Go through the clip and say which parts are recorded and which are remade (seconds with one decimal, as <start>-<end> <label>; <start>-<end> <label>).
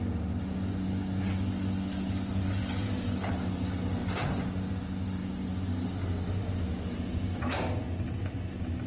0.0-2.3 recorded; 2.3-3.3 remade; 3.3-8.9 recorded